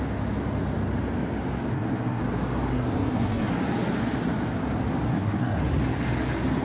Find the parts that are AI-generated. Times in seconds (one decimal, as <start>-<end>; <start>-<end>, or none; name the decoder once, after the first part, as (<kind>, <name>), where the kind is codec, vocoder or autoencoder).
1.7-2.2 (codec, SNAC); 2.7-3.5; 5.1-5.6